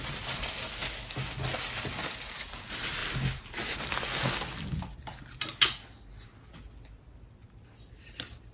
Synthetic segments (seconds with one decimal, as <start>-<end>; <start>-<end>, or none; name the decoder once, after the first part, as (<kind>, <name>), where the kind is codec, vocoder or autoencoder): none